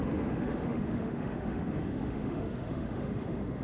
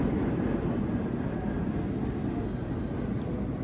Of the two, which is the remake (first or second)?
first